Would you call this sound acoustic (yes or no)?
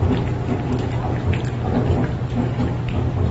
yes